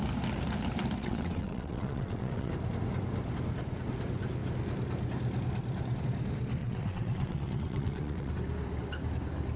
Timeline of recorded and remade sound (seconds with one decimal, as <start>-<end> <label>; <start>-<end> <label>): 0.0-1.0 recorded; 1.0-2.5 remade; 2.5-6.6 recorded; 6.6-8.3 remade; 8.3-9.6 recorded